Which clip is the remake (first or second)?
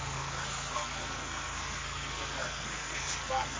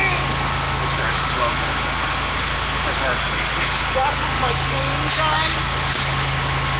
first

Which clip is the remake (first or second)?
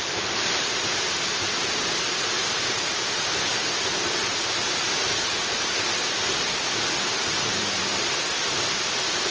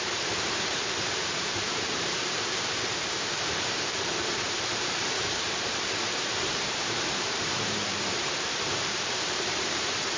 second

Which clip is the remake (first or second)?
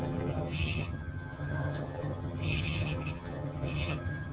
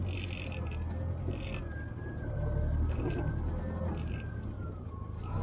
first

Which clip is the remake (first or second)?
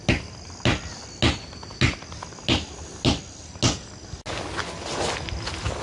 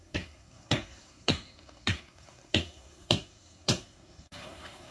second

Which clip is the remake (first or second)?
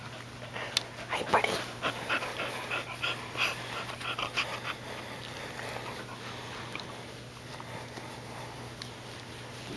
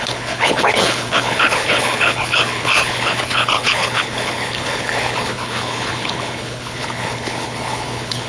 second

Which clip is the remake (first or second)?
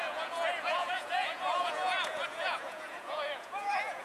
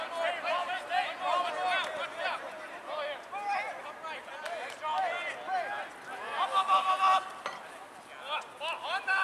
first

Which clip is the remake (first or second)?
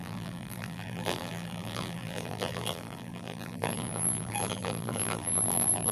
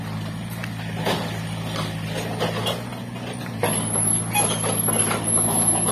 first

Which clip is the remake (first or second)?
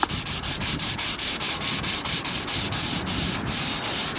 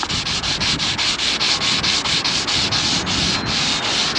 first